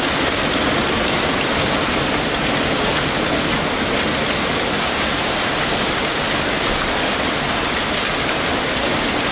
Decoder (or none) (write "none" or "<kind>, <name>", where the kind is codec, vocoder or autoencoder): none